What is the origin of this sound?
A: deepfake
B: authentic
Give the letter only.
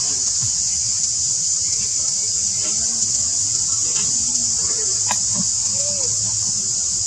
B